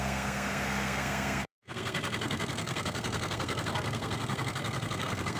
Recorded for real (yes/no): no